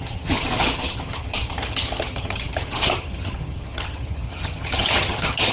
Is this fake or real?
fake